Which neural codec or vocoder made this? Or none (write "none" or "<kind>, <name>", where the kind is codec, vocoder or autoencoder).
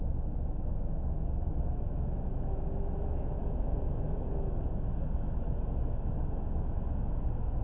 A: autoencoder, DAC-VAE